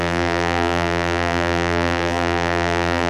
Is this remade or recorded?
remade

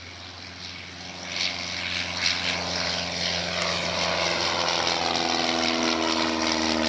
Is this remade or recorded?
recorded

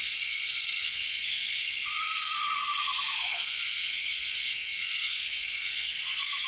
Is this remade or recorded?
remade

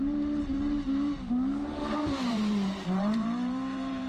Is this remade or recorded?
remade